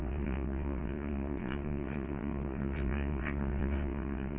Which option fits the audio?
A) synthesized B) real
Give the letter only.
A